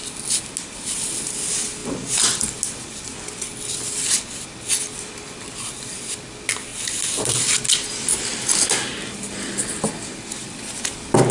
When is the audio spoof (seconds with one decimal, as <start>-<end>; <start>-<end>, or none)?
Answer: 6.7-7.4